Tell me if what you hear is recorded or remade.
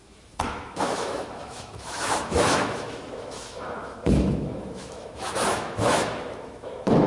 remade